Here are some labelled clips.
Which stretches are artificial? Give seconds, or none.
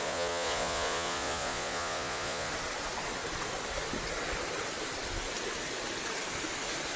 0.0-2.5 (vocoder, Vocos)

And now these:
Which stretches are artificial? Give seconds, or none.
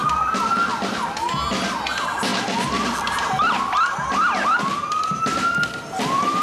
none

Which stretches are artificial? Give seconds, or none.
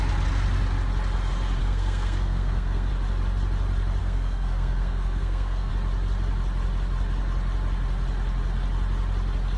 1.6-2.9 (codec, SNAC); 4.0-5.7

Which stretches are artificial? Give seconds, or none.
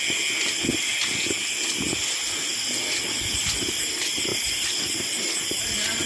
none